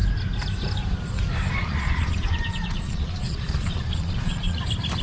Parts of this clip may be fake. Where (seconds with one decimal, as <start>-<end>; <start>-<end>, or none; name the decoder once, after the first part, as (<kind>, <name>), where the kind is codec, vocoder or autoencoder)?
1.6-4.6 (vocoder, Vocos)

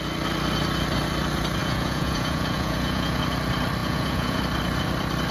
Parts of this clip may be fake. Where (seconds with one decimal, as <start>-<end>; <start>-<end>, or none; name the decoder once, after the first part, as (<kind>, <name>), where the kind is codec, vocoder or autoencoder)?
1.6-3.2 (vocoder, Vocos); 3.8-4.4

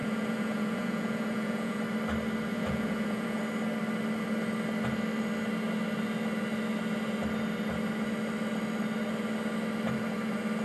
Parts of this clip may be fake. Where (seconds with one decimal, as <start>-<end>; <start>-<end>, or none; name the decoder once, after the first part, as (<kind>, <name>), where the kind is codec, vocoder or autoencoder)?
0.0-1.8 (vocoder, Vocos); 2.5-3.4

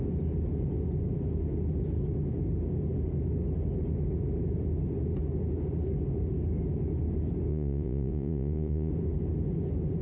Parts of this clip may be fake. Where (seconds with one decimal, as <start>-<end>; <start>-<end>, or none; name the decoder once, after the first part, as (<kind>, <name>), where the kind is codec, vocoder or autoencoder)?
7.5-8.9 (vocoder, Vocos)

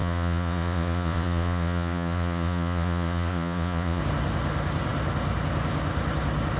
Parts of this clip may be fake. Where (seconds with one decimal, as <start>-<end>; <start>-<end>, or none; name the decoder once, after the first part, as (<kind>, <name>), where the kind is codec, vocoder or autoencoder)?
0.0-4.0 (vocoder, Vocos)

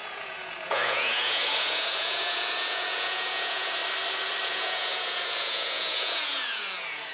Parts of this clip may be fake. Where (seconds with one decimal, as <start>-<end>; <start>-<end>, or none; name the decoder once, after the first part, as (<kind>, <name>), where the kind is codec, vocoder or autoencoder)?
0.0-3.8 (vocoder, Vocos); 4.5-7.1